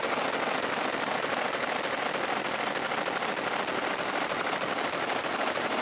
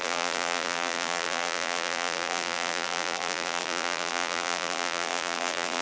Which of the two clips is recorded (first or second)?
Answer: first